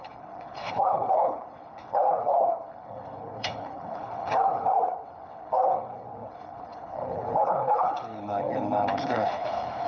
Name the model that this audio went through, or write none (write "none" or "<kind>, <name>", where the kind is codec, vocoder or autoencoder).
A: codec, HILCodec